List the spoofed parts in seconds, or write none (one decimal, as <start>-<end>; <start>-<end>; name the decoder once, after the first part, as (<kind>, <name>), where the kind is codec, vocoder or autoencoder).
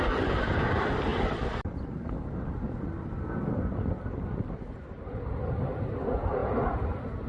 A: 1.1-5.5 (vocoder, BigVGAN v2)